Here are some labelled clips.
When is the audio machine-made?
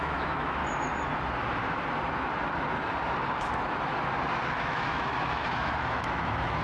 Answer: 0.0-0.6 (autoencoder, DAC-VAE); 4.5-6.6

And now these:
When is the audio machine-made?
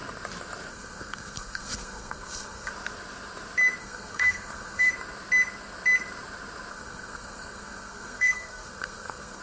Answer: 0.7-2.7 (codec, SNAC); 3.8-4.9; 6.7-9.4